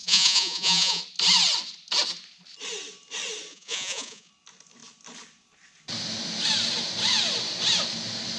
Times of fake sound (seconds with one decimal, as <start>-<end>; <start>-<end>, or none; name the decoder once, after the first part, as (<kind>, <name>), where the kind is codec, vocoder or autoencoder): 0.0-1.0 (vocoder, Vocos); 3.5-4.3